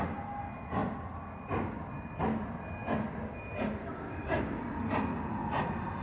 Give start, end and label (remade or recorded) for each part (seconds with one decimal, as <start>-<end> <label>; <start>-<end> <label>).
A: 0.0-3.8 recorded; 3.8-4.6 remade; 4.6-6.0 recorded